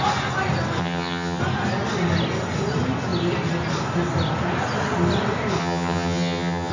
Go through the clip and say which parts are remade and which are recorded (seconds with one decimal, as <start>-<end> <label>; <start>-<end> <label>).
0.0-0.8 recorded; 0.8-1.4 remade; 1.4-5.6 recorded; 5.6-6.7 remade